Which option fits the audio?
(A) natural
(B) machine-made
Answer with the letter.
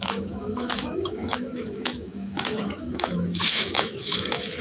B